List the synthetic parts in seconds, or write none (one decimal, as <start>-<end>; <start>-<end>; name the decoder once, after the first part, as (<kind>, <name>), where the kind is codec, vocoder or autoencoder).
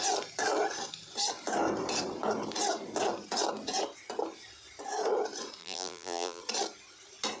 5.6-6.4 (vocoder, BigVGAN v2)